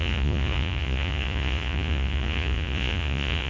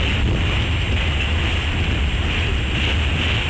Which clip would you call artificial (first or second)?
first